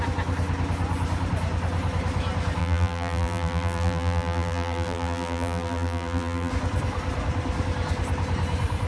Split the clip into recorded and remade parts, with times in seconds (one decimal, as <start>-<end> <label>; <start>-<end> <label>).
0.0-2.6 recorded; 2.6-6.5 remade; 6.5-8.9 recorded